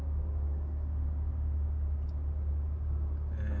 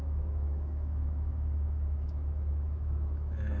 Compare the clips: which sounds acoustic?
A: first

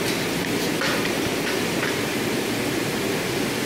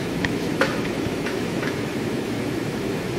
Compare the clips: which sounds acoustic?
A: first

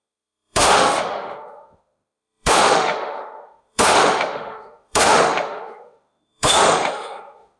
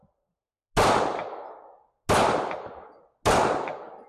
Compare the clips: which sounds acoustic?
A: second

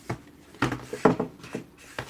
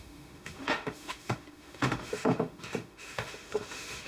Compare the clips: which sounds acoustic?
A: first